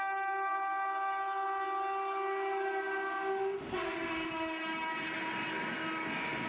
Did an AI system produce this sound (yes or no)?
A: no